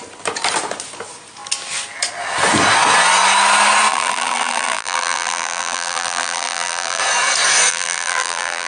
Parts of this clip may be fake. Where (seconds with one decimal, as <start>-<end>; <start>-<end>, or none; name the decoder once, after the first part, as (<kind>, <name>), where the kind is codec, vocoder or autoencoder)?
3.9-7.0 (vocoder, BigVGAN v2); 7.7-8.7

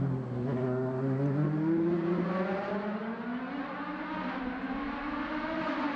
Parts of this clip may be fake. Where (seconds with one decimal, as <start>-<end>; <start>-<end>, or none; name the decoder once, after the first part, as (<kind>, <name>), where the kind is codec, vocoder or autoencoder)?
none

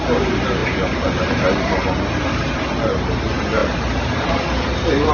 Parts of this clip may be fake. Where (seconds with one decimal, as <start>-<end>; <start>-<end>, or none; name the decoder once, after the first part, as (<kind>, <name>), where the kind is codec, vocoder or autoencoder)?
3.6-4.3 (vocoder, BigVGAN v2)

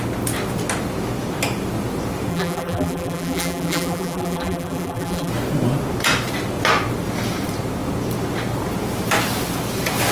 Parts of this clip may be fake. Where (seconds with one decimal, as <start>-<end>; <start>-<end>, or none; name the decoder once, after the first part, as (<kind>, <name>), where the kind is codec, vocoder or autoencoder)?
2.3-5.3 (vocoder, BigVGAN v2)

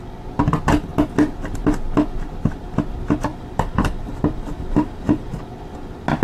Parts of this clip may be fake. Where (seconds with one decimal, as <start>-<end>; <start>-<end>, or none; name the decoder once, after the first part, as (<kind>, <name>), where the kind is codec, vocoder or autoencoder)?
3.3-5.4 (vocoder, BigVGAN v2)